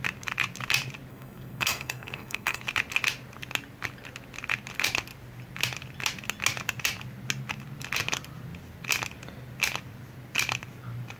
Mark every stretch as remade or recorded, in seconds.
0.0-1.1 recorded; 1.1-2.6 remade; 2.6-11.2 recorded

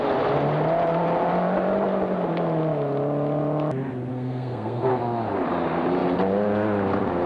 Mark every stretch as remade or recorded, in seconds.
0.0-4.1 recorded; 4.1-4.9 remade; 4.9-7.3 recorded

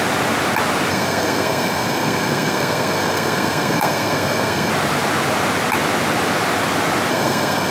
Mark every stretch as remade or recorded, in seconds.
0.0-0.9 recorded; 0.9-4.7 remade; 4.7-7.1 recorded; 7.1-7.7 remade

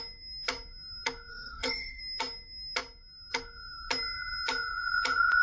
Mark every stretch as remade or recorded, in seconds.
0.0-1.3 recorded; 1.3-2.0 remade; 2.0-5.4 recorded

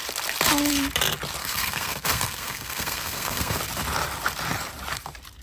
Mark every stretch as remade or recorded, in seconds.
0.0-1.4 recorded; 1.4-3.6 remade; 3.6-5.4 recorded

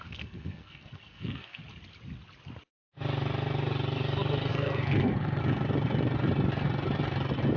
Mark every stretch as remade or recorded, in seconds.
0.0-1.6 remade; 1.6-4.5 recorded; 4.5-5.4 remade; 5.4-7.6 recorded